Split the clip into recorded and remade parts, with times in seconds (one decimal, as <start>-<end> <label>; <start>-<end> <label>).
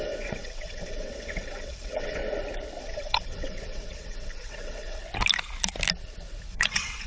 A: 0.0-2.2 remade; 2.2-2.8 recorded; 2.8-5.0 remade; 5.0-6.5 recorded; 6.5-7.1 remade